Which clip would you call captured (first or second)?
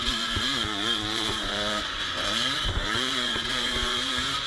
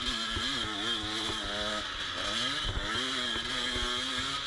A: second